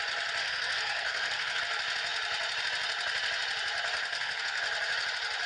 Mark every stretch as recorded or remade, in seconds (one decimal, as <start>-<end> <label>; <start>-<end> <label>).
0.0-0.4 recorded; 0.4-1.6 remade; 1.6-4.1 recorded; 4.1-4.6 remade; 4.6-5.5 recorded